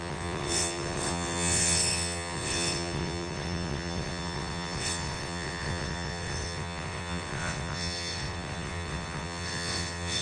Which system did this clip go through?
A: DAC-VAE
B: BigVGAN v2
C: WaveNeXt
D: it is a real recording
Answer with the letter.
C